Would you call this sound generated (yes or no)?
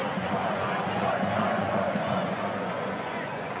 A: yes